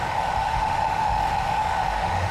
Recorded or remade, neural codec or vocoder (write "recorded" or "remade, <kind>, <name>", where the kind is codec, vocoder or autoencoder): remade, autoencoder, DAC-VAE